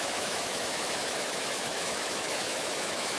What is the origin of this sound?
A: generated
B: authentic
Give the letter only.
A